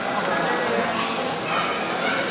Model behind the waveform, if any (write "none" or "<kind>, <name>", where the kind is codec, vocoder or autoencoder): none